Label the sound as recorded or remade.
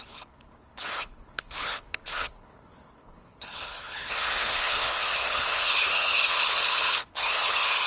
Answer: remade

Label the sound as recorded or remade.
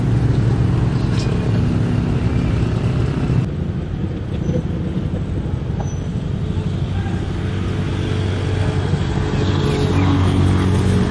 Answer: recorded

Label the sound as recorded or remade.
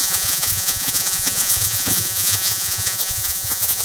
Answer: remade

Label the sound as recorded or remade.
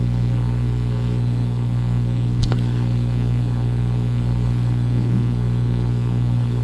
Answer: remade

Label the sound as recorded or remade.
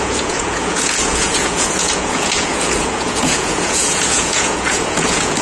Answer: remade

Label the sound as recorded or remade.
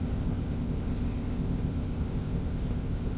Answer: remade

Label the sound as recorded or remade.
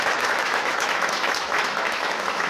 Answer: remade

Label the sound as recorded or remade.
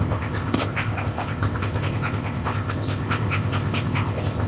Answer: remade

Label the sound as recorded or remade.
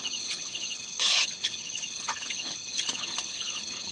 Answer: remade